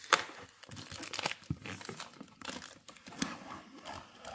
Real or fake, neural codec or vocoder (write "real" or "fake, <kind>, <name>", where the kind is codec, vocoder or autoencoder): real